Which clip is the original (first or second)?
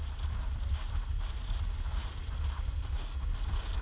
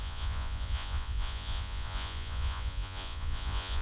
first